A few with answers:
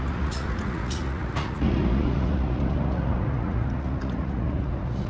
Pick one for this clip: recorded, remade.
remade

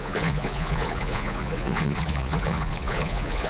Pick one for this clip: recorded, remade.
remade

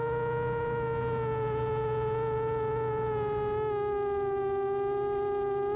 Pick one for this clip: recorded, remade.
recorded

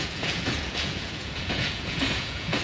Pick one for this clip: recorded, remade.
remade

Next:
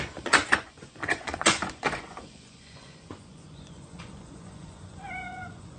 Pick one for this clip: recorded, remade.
remade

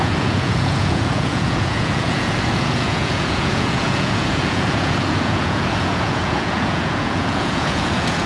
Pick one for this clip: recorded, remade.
remade